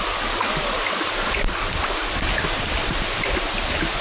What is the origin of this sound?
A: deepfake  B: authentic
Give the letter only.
B